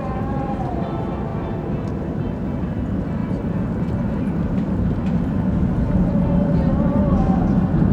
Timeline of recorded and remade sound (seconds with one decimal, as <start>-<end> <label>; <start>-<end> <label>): 0.0-7.9 recorded